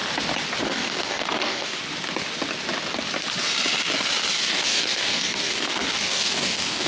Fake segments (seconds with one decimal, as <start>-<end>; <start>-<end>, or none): 0.6-1.8; 4.5-6.9